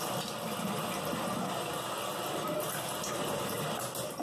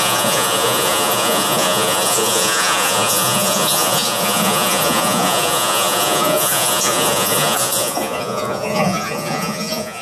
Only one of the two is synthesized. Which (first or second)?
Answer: second